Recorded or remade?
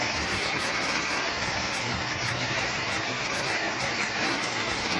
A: remade